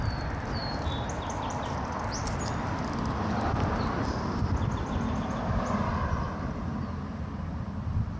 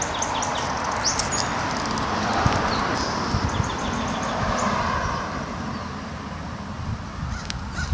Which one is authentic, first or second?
second